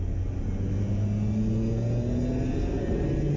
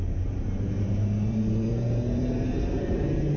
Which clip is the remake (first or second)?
second